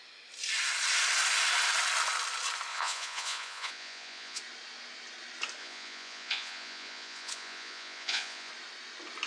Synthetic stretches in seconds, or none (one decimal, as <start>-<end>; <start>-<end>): 2.7-4.4; 5.6-8.5